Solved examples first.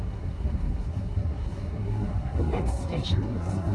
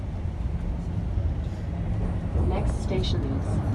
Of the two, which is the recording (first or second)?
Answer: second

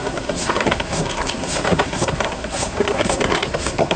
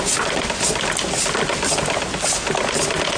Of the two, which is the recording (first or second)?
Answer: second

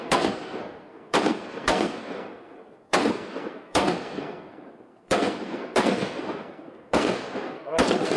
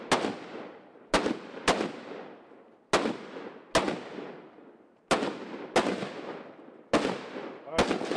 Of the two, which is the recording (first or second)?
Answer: second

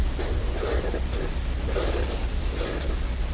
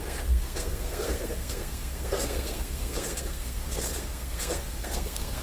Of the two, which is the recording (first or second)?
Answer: first